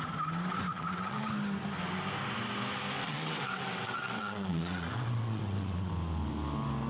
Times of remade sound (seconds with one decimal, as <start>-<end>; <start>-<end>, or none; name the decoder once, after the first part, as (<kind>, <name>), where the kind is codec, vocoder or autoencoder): 0.7-1.2 (vocoder, WaveNeXt); 3.0-5.9